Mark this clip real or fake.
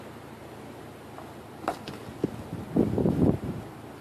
real